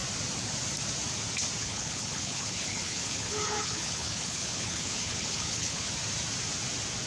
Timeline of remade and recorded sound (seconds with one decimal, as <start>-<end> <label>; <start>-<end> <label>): 0.0-1.6 recorded; 1.6-5.9 remade; 5.9-7.1 recorded